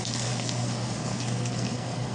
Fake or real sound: fake